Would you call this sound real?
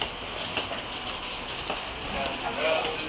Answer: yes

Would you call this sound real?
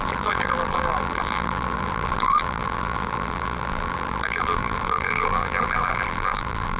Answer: no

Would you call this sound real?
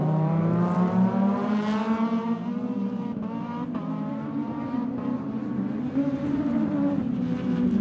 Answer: no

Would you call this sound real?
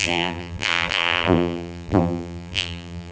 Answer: no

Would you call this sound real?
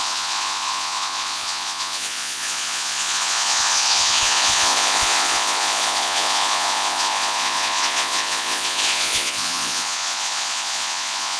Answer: no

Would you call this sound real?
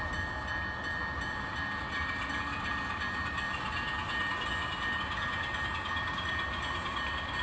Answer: yes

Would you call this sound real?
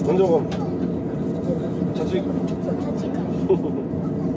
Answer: yes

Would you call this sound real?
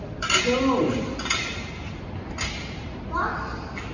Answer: yes